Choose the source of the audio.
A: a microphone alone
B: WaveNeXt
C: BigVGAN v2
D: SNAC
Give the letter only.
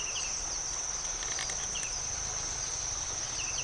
A